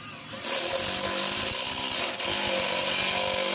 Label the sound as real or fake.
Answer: real